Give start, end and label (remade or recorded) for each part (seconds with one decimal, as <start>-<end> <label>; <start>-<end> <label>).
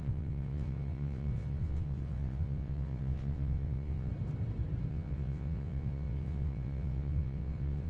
0.0-4.1 remade; 4.1-4.9 recorded; 4.9-7.9 remade